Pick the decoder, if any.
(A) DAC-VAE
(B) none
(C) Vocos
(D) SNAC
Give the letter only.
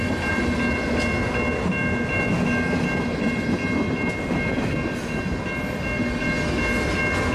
B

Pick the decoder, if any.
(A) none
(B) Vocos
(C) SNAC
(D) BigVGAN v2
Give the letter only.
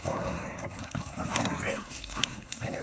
C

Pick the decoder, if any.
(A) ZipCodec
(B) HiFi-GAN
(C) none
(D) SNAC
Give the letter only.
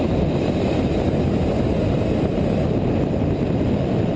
C